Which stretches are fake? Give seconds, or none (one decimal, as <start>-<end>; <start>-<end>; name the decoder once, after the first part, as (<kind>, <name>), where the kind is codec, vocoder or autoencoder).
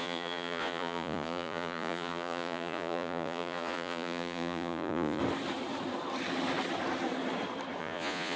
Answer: 0.0-5.2 (vocoder, Vocos); 7.8-8.4